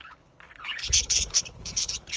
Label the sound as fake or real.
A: fake